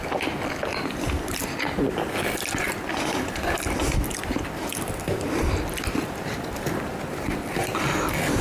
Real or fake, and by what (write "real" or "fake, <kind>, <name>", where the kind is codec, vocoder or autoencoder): real